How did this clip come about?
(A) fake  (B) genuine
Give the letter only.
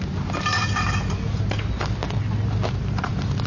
B